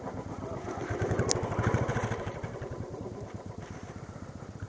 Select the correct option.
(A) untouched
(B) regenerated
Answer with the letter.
B